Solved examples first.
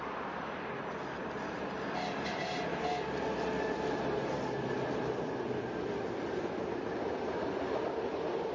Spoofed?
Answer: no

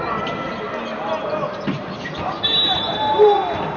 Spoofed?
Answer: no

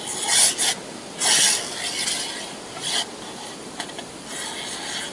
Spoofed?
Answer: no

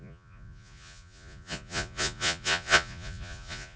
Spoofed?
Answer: yes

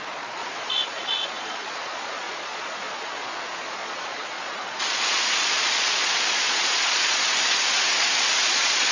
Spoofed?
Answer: yes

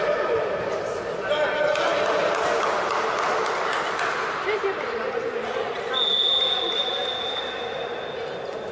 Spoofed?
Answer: no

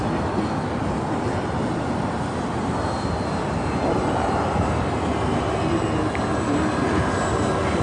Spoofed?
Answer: no